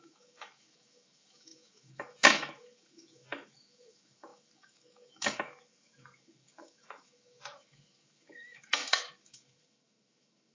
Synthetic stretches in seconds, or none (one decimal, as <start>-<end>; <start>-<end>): 0.0-10.5